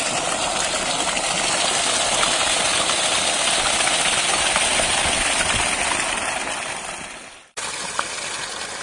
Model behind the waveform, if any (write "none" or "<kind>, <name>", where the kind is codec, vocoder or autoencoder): none